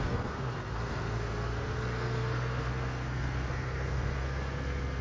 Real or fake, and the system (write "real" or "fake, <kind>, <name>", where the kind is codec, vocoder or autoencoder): fake, codec, SNAC